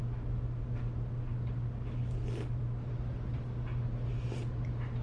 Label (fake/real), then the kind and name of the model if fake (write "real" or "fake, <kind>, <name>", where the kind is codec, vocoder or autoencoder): real